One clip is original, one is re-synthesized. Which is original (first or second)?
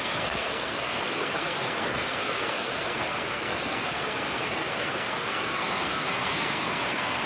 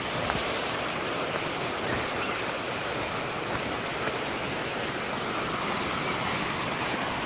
second